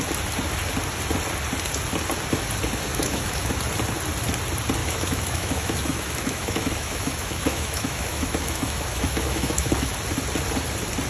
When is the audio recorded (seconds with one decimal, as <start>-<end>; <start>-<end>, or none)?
0.0-2.9; 3.5-4.8; 9.9-11.1